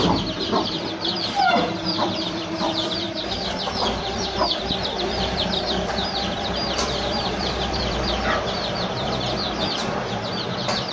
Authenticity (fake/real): fake